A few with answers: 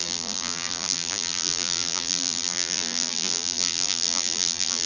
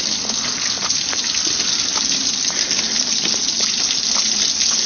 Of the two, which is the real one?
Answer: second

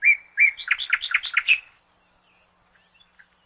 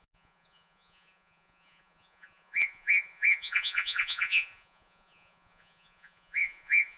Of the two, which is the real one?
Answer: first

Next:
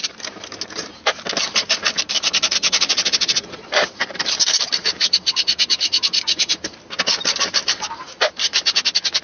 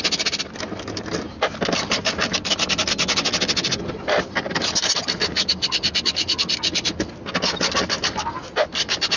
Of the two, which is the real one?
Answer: second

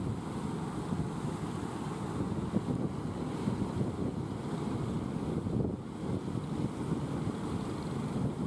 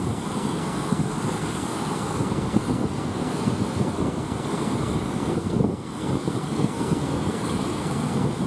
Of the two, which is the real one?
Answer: first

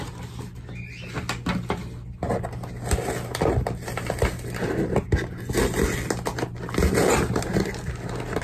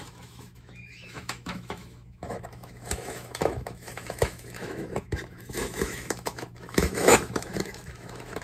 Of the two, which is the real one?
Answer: first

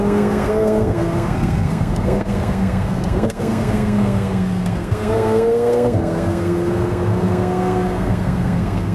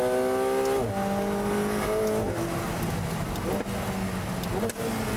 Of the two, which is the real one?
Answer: second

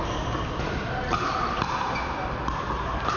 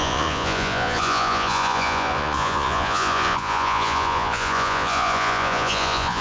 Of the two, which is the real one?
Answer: first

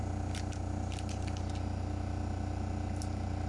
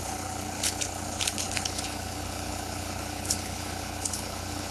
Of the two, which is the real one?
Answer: first